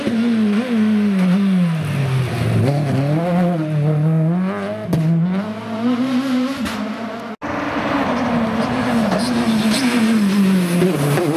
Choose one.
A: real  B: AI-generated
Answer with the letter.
A